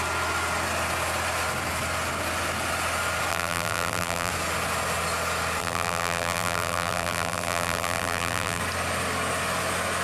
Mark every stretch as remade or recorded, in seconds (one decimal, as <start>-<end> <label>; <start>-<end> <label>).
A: 0.0-3.3 recorded; 3.3-4.3 remade; 4.3-5.6 recorded; 5.6-8.6 remade; 8.6-10.0 recorded